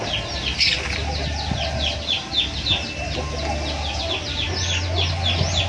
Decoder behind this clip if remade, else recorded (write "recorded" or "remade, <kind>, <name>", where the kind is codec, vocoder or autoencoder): recorded